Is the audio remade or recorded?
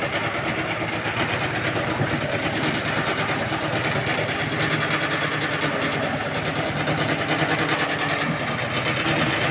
recorded